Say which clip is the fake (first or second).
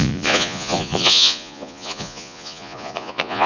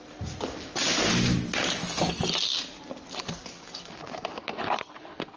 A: first